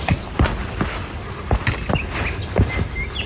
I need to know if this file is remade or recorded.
recorded